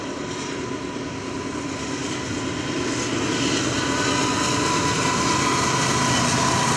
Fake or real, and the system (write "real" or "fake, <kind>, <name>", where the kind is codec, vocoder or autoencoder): real